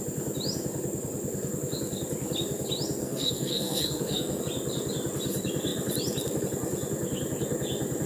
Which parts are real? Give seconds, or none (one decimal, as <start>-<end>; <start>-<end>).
0.0-3.0; 4.4-8.1